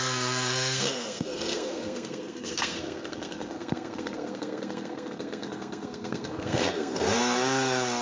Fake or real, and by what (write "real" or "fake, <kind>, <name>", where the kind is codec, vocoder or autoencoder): fake, codec, SNAC